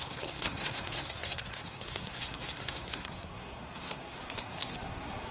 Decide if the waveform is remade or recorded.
remade